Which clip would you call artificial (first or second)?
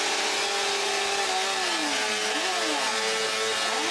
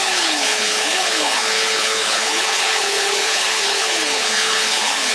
second